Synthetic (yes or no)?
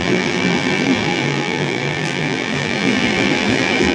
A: yes